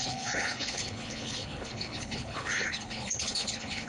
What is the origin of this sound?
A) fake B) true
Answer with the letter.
A